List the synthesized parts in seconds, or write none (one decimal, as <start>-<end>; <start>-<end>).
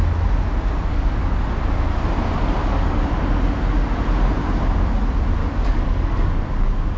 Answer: 0.9-1.5; 2.6-3.2; 5.4-7.0